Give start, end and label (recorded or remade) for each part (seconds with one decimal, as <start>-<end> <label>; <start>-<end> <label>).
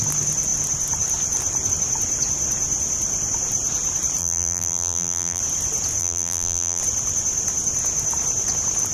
0.0-4.2 recorded; 4.2-5.4 remade; 5.4-6.0 recorded; 6.0-6.8 remade; 6.8-8.9 recorded